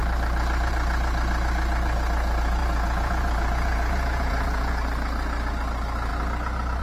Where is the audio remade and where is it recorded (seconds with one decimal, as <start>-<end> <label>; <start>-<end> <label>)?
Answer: 0.0-2.6 recorded; 2.6-4.7 remade; 4.7-6.8 recorded